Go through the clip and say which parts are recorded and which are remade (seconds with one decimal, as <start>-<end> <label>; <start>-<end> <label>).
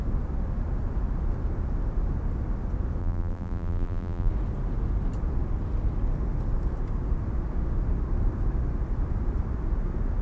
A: 0.0-3.0 recorded; 3.0-4.3 remade; 4.3-10.2 recorded